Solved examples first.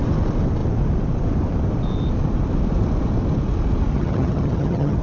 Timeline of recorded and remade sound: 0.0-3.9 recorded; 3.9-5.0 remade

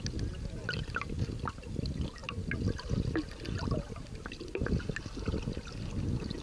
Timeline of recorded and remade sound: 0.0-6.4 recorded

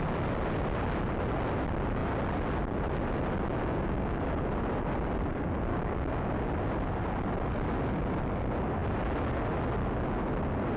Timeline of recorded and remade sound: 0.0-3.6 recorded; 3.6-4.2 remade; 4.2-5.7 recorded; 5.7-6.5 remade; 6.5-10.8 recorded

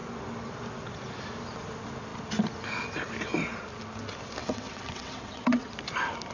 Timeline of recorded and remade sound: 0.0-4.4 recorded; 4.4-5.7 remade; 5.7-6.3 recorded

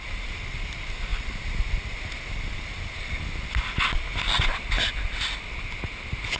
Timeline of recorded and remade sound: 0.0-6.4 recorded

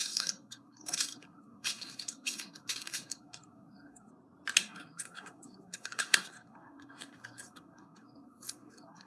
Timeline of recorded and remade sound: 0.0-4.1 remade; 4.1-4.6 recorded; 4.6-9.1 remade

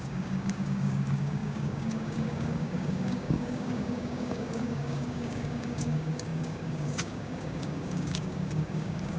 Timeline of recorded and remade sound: 0.0-9.2 remade

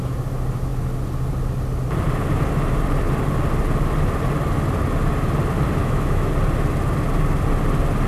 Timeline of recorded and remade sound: 0.0-5.8 recorded; 5.8-6.3 remade; 6.3-8.1 recorded